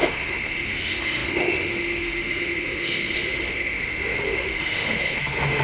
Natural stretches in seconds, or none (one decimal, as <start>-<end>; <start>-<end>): none